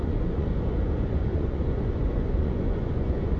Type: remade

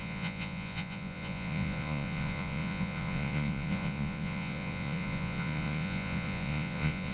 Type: remade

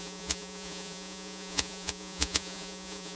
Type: remade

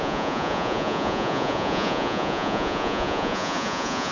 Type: remade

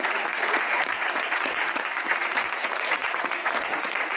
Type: remade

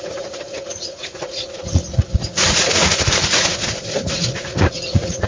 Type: remade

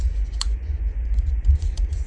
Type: remade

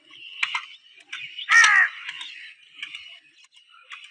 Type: recorded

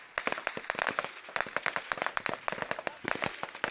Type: recorded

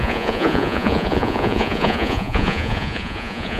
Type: remade